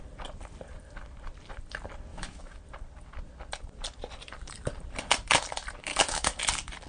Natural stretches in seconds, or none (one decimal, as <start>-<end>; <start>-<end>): 0.0-2.1; 2.6-5.9; 6.4-6.9